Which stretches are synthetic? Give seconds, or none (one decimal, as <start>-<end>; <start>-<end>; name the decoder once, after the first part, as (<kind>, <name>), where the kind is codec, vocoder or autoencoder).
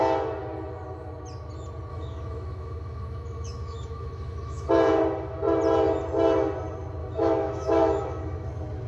1.9-4.7 (autoencoder, DAC-VAE); 7.0-8.5